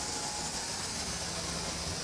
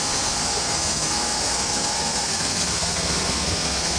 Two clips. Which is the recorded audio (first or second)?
first